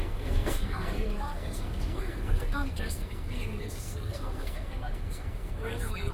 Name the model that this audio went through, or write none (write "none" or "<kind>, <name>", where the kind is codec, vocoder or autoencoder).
codec, SNAC